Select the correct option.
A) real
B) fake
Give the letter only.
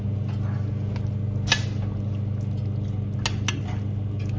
A